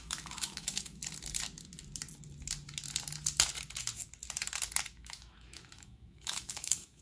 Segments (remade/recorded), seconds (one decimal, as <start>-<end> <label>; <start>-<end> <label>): 0.0-1.0 remade; 1.0-4.9 recorded; 4.9-7.0 remade

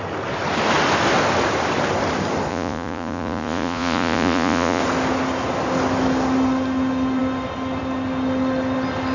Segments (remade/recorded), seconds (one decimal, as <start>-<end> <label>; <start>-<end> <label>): 0.0-2.5 recorded; 2.5-4.8 remade; 4.8-9.1 recorded

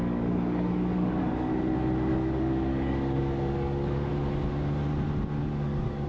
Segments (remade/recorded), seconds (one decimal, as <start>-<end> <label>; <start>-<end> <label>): 0.0-1.5 remade; 1.5-2.1 recorded; 2.1-4.1 remade; 4.1-5.4 recorded; 5.4-6.1 remade

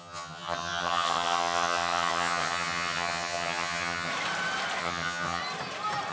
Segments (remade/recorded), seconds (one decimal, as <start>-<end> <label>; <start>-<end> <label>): 0.0-4.1 remade; 4.1-4.8 recorded; 4.8-5.4 remade; 5.4-6.1 recorded

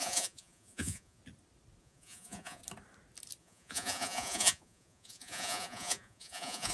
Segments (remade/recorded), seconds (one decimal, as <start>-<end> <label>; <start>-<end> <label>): 0.0-1.2 remade; 1.2-1.8 recorded; 1.8-2.6 remade; 2.6-3.4 recorded; 3.4-6.7 remade